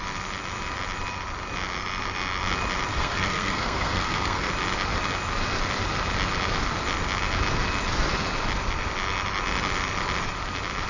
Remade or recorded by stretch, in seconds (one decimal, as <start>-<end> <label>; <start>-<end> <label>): 0.0-2.9 recorded; 2.9-4.5 remade; 4.5-10.9 recorded